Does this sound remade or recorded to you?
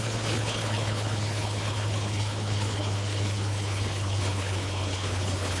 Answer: remade